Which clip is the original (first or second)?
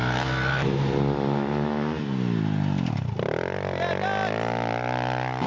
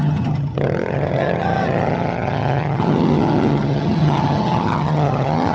first